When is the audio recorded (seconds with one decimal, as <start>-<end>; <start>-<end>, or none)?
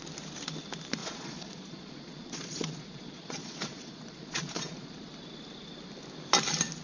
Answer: 0.0-1.0; 5.1-6.8